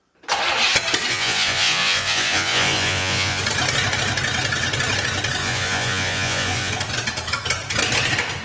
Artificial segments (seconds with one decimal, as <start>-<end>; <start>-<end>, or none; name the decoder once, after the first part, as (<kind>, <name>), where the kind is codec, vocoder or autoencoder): 1.1-3.4 (vocoder, Vocos); 5.4-6.7